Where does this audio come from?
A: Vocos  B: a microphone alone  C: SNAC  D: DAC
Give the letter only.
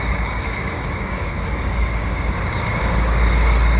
D